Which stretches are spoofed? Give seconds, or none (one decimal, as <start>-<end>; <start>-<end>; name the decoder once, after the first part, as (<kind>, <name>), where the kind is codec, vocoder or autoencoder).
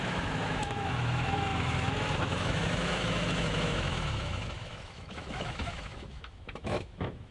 0.0-7.3 (autoencoder, DAC-VAE)